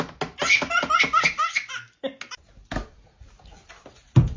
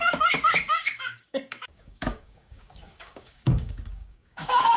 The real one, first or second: first